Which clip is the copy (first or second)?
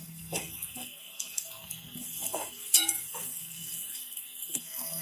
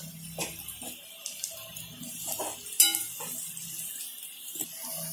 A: first